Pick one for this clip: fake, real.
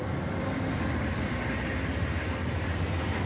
real